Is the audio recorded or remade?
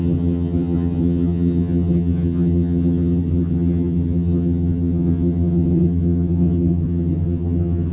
remade